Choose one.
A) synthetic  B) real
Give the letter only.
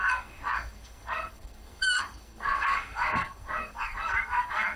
A